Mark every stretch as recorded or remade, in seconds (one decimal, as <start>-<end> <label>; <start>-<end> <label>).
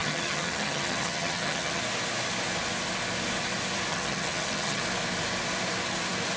0.0-1.8 remade; 1.8-3.9 recorded; 3.9-4.8 remade; 4.8-6.4 recorded